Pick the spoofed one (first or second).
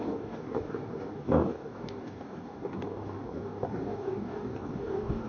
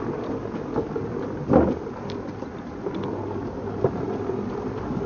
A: first